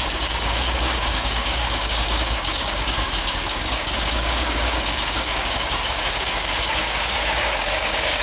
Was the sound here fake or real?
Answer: fake